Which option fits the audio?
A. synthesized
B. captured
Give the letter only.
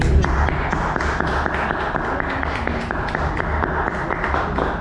B